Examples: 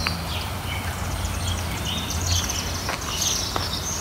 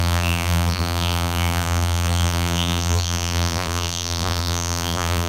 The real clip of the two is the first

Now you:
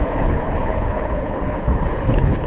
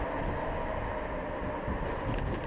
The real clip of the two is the second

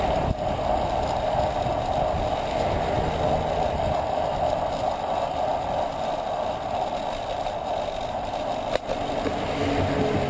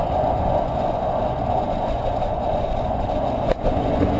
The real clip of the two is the first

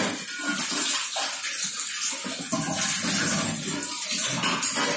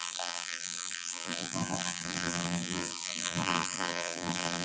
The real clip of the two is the first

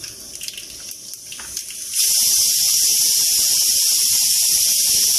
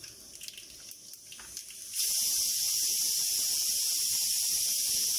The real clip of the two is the second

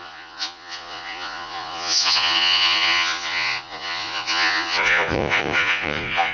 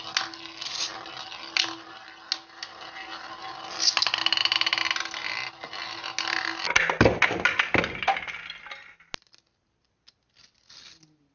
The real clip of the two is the second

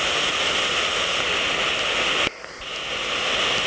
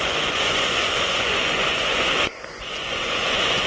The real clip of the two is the first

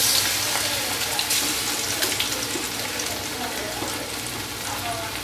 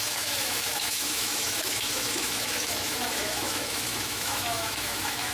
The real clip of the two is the first